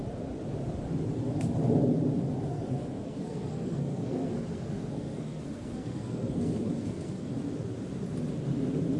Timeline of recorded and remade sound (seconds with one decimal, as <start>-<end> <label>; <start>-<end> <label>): 0.0-2.5 recorded; 2.5-7.3 remade; 7.3-9.0 recorded

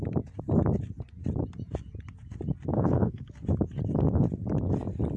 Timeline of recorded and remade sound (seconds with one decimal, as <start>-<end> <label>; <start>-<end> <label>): 0.0-2.7 recorded; 2.7-3.3 remade; 3.3-5.2 recorded

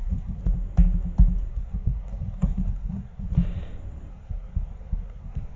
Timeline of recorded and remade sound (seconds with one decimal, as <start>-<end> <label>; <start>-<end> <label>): 0.0-0.4 remade; 0.4-1.5 recorded; 1.5-3.3 remade; 3.3-4.1 recorded; 4.1-5.6 remade

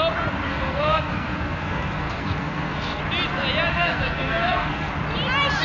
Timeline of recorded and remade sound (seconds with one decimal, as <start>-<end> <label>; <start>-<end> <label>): 0.0-0.5 recorded; 0.5-3.0 remade; 3.0-3.7 recorded; 3.7-4.9 remade; 4.9-5.6 recorded

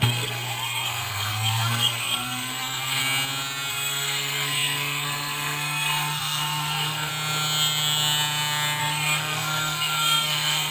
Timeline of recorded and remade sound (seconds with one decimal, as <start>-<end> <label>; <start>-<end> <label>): 0.0-3.0 remade; 3.0-3.7 recorded; 3.7-7.1 remade; 7.1-8.8 recorded; 8.8-10.7 remade

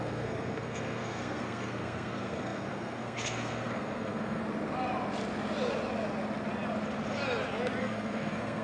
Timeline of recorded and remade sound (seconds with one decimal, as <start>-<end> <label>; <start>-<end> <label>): 0.0-4.4 remade; 4.4-7.8 recorded; 7.8-8.6 remade

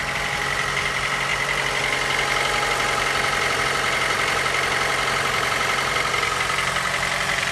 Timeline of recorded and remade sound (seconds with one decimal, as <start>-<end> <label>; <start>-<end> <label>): 0.0-7.5 recorded

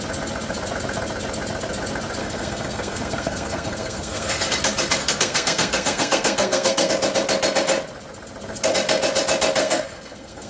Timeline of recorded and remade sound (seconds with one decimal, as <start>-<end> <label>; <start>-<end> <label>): 0.0-2.2 recorded; 2.2-4.5 remade; 4.5-5.0 recorded; 5.0-6.9 remade; 6.9-9.6 recorded; 9.6-10.5 remade